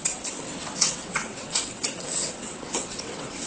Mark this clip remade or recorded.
remade